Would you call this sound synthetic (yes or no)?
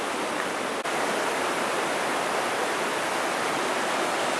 no